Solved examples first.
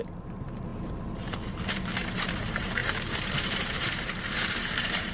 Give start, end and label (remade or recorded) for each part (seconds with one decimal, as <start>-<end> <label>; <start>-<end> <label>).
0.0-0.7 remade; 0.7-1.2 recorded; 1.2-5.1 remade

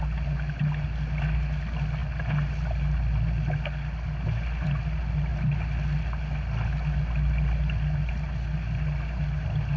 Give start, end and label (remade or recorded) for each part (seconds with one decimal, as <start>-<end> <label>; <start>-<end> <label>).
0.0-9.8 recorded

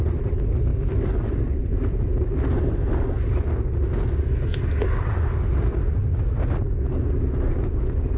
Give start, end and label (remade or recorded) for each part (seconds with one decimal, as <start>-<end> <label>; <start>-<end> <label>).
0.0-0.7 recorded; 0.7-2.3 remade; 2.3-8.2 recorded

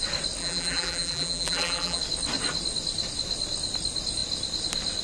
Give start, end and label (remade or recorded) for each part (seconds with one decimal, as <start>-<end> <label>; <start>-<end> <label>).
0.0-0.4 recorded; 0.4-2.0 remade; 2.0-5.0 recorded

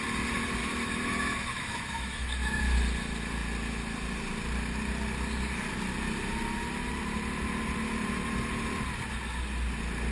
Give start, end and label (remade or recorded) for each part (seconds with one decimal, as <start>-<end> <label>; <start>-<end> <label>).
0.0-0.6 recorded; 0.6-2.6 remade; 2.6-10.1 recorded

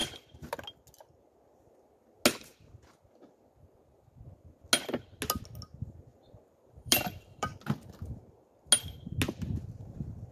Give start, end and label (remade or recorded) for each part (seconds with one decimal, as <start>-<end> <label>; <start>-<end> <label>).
0.0-6.1 recorded; 6.1-7.9 remade; 7.9-10.3 recorded